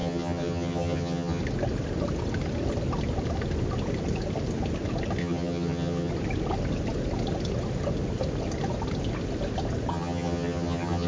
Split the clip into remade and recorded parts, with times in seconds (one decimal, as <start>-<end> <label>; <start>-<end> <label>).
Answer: 0.0-1.4 remade; 1.4-5.2 recorded; 5.2-6.1 remade; 6.1-9.9 recorded; 9.9-11.1 remade